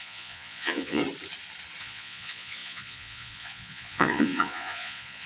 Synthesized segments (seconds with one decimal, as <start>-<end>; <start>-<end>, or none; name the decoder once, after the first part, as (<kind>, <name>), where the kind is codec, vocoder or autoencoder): 0.0-1.0 (vocoder, Vocos); 1.8-5.3